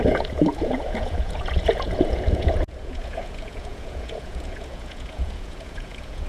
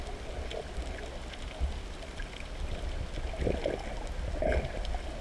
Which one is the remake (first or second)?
first